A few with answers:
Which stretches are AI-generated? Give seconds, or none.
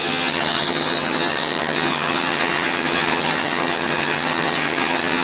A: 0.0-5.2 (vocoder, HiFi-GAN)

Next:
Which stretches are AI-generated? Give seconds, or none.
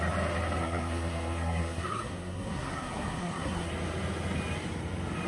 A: 0.6-3.7 (codec, SNAC)